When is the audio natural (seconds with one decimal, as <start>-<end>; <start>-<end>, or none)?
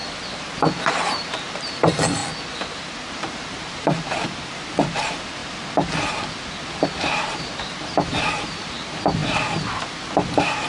0.0-1.1; 2.2-3.1; 5.4-6.7